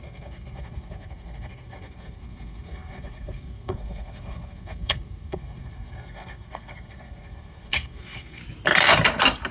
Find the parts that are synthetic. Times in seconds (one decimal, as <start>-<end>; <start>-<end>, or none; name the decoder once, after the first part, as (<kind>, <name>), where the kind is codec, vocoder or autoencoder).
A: 0.0-8.4 (codec, SNAC)